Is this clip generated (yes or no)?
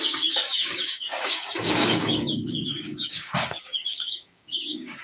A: yes